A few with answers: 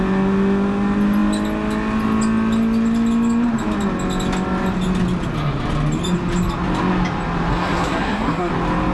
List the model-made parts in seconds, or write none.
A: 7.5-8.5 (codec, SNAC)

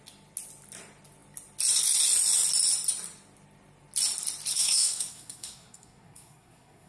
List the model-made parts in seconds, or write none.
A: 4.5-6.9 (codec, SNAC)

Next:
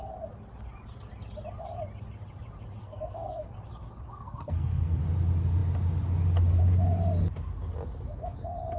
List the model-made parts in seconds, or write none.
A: 2.8-3.5 (codec, SNAC); 4.1-5.0

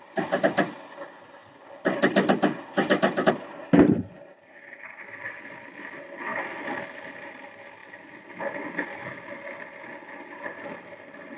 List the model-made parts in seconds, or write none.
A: none

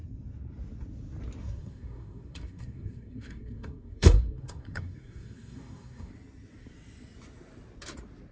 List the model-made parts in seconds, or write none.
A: 1.4-6.1 (codec, SNAC)

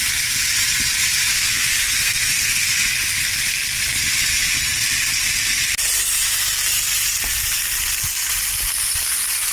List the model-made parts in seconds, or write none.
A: 1.3-2.7 (codec, SNAC)

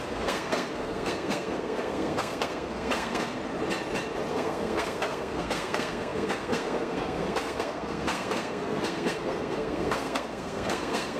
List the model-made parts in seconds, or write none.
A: 0.0-3.4 (codec, SNAC); 4.3-11.2

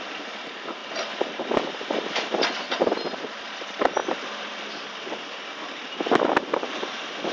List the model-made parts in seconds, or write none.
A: none